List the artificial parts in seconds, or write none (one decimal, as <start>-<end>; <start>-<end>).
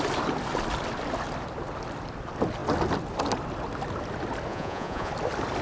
4.5-5.1